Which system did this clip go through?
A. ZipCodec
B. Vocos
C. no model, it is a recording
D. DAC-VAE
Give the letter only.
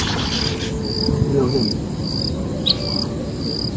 C